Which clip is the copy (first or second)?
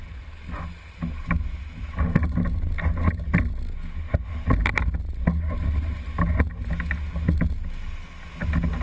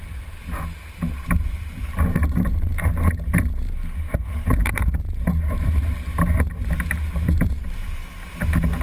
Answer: second